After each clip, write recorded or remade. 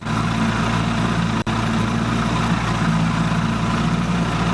recorded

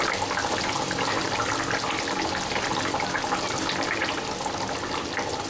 recorded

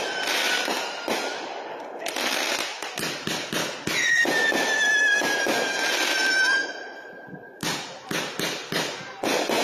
recorded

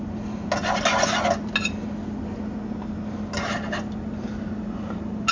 recorded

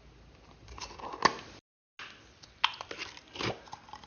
recorded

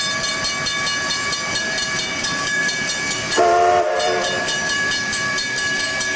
remade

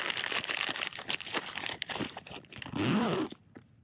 remade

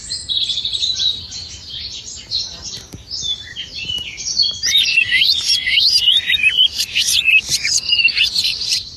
remade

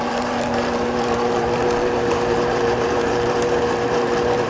remade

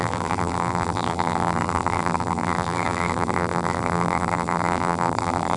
remade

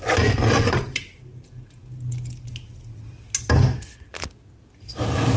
recorded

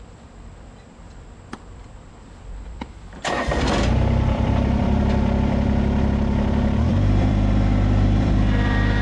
remade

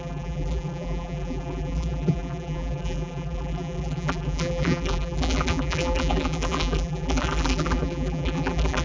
remade